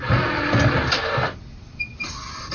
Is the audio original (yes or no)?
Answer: yes